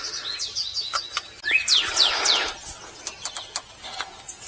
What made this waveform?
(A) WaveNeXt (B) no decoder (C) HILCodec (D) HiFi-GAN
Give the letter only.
B